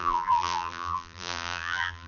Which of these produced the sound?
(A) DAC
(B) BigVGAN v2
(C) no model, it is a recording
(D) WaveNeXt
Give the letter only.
B